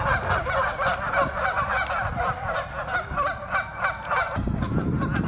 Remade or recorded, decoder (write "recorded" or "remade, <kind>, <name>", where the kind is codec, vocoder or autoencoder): recorded